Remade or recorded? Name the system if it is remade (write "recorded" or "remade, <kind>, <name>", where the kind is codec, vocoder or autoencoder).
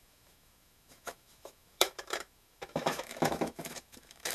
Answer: remade, autoencoder, DAC-VAE